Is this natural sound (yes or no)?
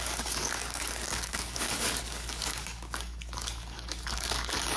no